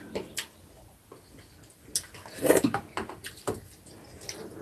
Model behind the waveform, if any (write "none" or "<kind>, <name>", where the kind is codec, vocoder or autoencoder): none